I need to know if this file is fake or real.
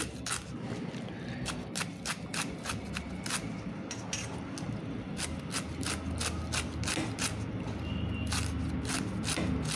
real